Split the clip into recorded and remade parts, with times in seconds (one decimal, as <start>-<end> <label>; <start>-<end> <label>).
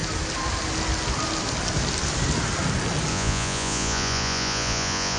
0.0-3.1 recorded; 3.1-5.2 remade